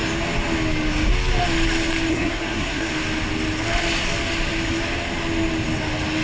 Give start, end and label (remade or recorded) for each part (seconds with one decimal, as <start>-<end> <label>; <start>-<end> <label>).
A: 0.0-2.1 recorded; 2.1-2.9 remade; 2.9-6.2 recorded